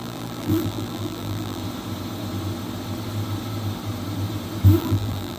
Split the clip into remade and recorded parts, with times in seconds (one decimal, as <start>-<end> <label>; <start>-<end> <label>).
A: 0.0-1.6 remade; 1.6-4.8 recorded; 4.8-5.4 remade